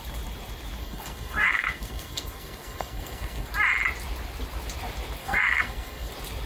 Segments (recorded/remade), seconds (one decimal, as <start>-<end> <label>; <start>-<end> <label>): 0.0-0.8 recorded; 0.8-3.5 remade; 3.5-5.2 recorded; 5.2-6.1 remade; 6.1-6.5 recorded